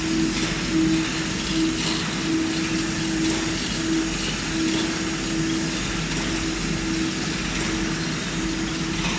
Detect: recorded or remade recorded